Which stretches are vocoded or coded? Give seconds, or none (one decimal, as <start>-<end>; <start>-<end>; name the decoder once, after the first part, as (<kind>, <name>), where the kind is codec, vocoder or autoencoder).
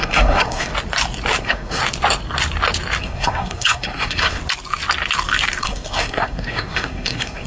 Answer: 0.0-0.7 (codec, SNAC); 1.4-1.8; 3.0-4.4; 5.6-7.5